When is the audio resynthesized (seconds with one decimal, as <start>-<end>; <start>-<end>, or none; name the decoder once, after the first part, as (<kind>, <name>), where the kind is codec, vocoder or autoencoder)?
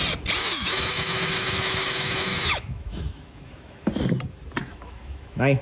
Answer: 0.4-3.8 (autoencoder, DAC-VAE); 4.6-5.6